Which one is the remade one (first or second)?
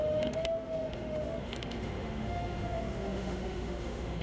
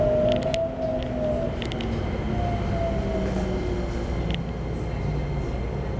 first